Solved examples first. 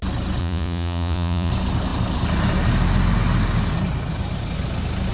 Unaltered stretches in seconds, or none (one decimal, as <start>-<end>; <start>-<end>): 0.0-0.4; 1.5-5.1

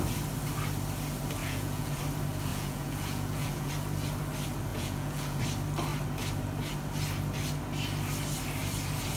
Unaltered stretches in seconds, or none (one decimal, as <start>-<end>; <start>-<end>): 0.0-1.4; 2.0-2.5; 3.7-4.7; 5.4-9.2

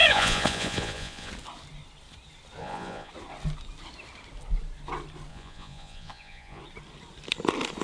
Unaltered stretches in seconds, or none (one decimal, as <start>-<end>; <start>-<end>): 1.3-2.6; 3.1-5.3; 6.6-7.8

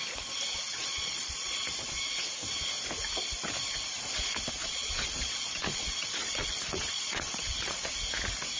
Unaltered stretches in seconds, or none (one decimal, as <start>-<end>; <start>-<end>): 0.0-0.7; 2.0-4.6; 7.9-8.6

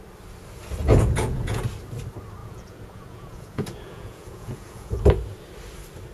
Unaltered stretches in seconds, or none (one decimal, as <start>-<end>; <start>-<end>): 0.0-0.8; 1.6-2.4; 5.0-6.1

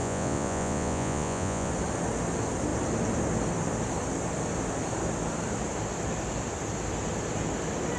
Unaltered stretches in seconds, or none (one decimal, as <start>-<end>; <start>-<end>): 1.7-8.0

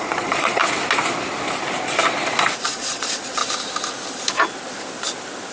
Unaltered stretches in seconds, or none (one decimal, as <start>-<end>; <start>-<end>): 0.6-2.6; 3.4-5.5

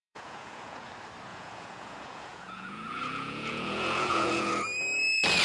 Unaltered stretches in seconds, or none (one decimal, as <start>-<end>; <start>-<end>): 0.9-1.3; 4.5-5.4